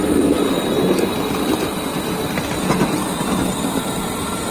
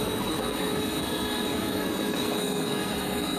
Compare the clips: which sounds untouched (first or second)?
first